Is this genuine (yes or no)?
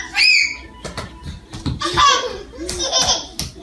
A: yes